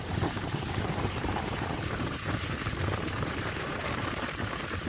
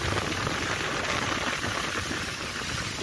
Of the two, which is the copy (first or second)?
first